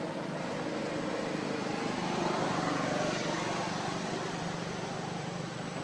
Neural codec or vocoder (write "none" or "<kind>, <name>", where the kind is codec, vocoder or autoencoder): none